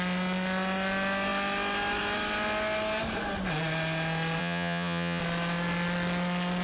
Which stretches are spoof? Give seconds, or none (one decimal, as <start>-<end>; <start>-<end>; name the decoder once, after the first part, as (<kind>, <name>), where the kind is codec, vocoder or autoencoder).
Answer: 4.4-5.2 (vocoder, Vocos)